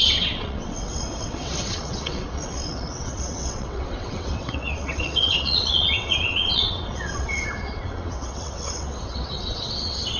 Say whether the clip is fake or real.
fake